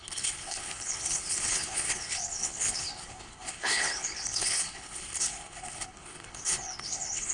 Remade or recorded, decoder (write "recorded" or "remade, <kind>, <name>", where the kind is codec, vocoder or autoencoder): remade, codec, HILCodec